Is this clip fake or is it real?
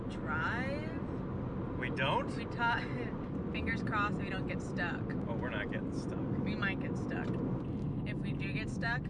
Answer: real